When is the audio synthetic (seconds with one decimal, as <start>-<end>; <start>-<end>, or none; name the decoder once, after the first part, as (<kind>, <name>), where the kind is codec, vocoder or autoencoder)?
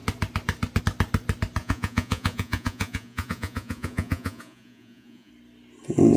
1.6-5.3 (vocoder, Vocos)